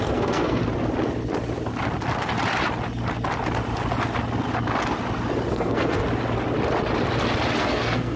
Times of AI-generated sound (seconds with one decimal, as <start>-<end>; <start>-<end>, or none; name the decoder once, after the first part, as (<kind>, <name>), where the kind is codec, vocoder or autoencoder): 0.0-0.6 (codec, SNAC); 5.5-6.0; 7.6-8.2